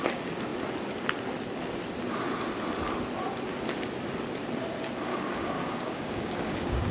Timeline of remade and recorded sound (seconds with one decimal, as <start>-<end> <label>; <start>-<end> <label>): 0.0-5.1 recorded; 5.1-6.9 remade